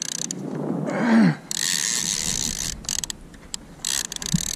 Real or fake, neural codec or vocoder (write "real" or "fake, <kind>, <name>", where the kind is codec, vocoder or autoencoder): real